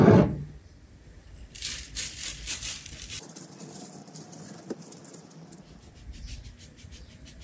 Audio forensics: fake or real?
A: fake